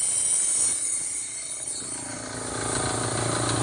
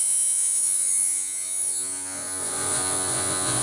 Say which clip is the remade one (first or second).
second